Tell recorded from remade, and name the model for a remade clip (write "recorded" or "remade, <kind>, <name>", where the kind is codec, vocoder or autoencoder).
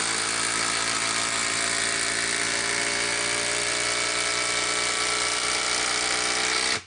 recorded